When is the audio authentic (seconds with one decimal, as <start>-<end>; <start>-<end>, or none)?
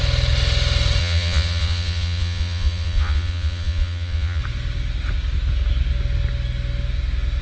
0.0-1.0; 4.4-7.4